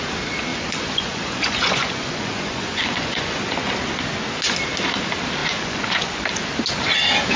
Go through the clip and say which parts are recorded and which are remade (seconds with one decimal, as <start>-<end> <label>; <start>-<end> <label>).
0.0-0.5 recorded; 0.5-3.7 remade; 3.7-5.4 recorded; 5.4-6.2 remade; 6.2-7.4 recorded